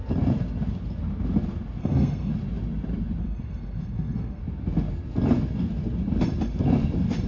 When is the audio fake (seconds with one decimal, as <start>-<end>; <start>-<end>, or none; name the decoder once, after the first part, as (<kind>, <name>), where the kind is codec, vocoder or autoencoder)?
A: 1.8-2.3 (codec, SNAC); 3.2-4.4